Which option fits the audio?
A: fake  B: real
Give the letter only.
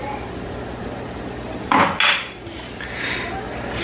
B